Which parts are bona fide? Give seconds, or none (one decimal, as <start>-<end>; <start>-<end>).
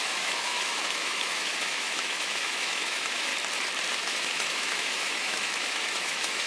3.3-3.9